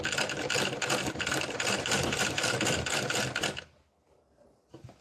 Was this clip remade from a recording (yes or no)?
no